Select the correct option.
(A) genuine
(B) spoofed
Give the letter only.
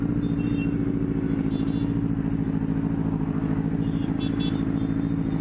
A